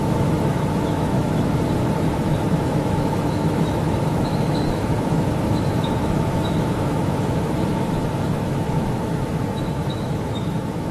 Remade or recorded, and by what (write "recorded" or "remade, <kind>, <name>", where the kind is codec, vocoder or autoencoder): remade, autoencoder, DAC-VAE